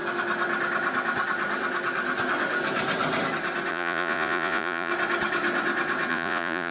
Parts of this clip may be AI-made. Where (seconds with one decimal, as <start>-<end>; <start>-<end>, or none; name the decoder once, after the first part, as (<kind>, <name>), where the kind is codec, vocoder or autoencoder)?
3.7-4.9 (vocoder, Vocos); 6.1-6.7

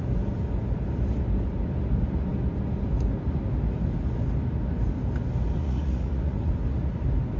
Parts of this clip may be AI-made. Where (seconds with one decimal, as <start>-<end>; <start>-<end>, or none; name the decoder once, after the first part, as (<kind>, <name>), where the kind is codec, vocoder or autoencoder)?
5.6-6.5 (vocoder, Vocos)

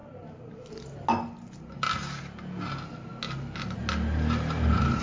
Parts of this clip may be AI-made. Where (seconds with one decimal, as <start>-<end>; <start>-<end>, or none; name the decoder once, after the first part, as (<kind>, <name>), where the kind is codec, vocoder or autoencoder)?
none

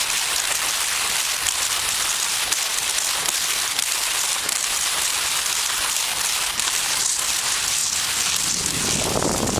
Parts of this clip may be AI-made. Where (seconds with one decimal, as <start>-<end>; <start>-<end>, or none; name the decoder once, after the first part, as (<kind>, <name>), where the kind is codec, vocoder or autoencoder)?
none

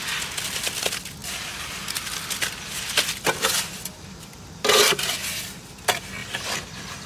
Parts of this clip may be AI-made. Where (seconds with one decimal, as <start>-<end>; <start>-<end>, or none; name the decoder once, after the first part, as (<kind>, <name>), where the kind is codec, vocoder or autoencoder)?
none